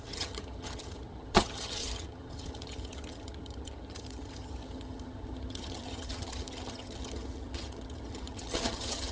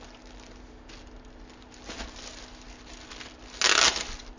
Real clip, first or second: second